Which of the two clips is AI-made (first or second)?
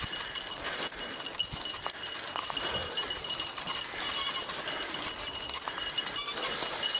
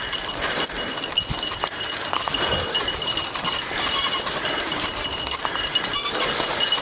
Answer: second